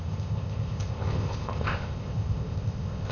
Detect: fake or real fake